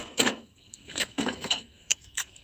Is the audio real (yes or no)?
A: no